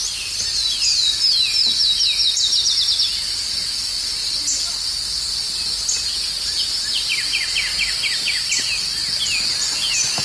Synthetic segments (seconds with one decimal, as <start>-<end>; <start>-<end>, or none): none